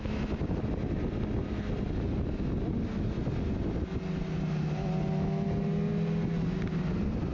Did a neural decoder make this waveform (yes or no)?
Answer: no